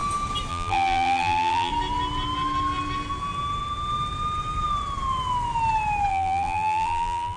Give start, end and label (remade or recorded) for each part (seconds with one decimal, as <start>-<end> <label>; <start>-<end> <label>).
0.0-0.5 recorded; 0.5-1.7 remade; 1.7-6.1 recorded; 6.1-7.4 remade